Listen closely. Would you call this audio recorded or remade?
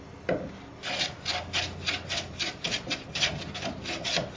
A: recorded